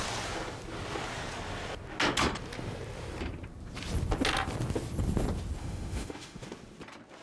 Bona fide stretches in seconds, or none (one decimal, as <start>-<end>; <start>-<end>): 0.0-5.6; 6.4-7.2